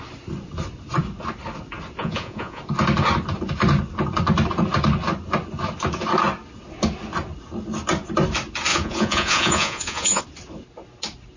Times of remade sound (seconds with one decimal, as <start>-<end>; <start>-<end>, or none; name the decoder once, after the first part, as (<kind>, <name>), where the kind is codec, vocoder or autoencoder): 2.0-2.6 (vocoder, Vocos); 8.7-10.2